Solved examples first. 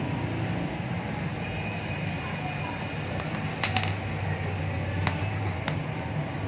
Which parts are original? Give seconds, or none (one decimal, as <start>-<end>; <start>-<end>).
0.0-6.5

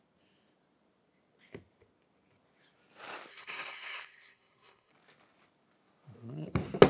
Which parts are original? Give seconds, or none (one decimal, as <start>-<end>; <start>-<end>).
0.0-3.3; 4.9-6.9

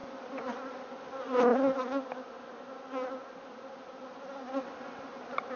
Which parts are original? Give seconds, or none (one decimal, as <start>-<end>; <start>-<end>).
0.0-5.6

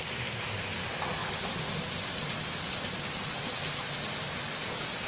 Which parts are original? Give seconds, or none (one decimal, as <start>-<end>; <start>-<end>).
0.0-5.1

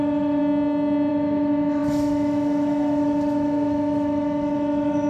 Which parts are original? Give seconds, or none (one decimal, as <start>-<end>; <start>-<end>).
0.4-1.1